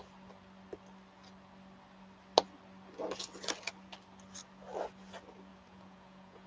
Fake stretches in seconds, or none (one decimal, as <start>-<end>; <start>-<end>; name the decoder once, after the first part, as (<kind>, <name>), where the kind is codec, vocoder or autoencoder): 5.5-6.5 (vocoder, Vocos)